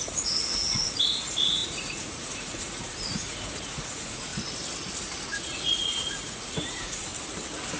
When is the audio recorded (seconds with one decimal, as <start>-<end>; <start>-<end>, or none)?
4.3-5.0; 7.1-7.8